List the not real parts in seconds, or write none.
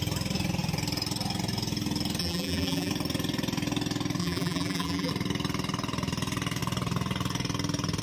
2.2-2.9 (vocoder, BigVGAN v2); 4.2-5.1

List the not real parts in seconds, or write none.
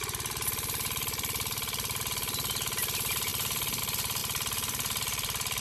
0.0-2.0 (vocoder, BigVGAN v2); 3.3-3.8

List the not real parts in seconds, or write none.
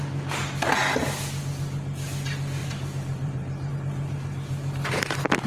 2.6-3.7 (vocoder, BigVGAN v2)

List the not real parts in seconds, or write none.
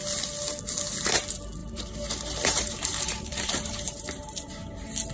1.6-4.5 (vocoder, BigVGAN v2)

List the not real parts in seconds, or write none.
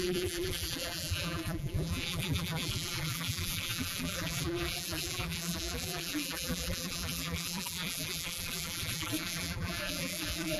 0.0-10.6 (vocoder, BigVGAN v2)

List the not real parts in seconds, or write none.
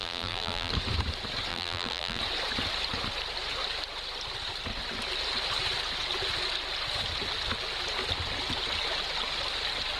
0.0-0.7 (vocoder, BigVGAN v2); 1.5-2.2